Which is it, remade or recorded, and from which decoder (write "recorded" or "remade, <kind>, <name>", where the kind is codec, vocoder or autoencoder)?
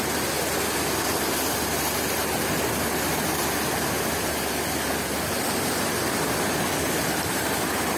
recorded